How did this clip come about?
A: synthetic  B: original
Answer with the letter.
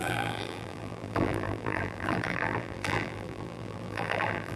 A